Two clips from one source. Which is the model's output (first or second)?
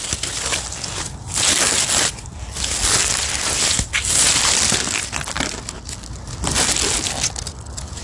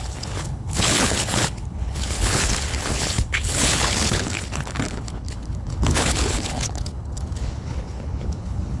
second